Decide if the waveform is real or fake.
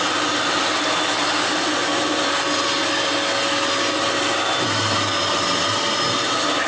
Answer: real